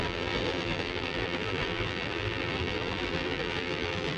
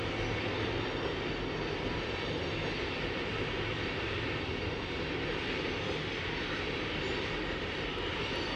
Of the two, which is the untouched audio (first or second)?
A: second